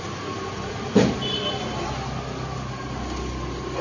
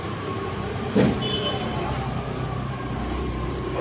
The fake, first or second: second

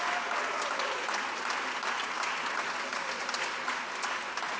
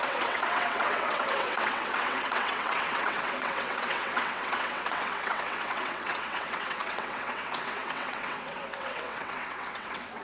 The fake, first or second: second